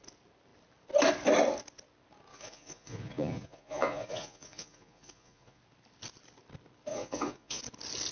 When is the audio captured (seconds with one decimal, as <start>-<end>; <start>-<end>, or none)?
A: 0.0-2.3; 5.6-6.9; 7.6-8.1